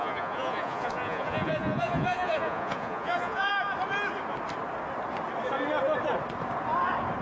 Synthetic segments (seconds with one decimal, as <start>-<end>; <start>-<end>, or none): 0.0-3.5